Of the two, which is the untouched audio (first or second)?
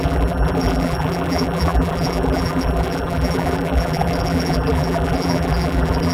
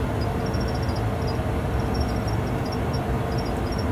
second